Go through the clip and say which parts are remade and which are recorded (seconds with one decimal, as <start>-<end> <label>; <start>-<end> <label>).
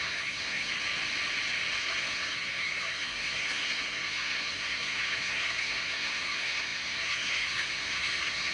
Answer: 0.0-0.7 remade; 0.7-1.8 recorded; 1.8-8.5 remade